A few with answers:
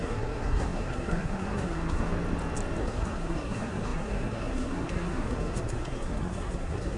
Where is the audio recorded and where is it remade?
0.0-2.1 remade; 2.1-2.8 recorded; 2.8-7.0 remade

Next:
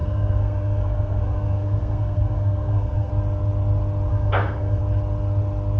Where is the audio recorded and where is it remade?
0.0-3.1 remade; 3.1-4.1 recorded; 4.1-4.8 remade; 4.8-5.8 recorded